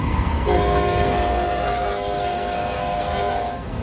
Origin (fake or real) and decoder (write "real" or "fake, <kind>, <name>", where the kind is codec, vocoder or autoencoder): fake, codec, SNAC